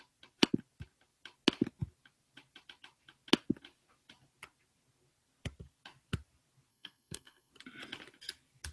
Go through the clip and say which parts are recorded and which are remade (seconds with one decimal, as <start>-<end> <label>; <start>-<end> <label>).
0.0-6.7 recorded; 6.7-7.5 remade; 7.5-8.7 recorded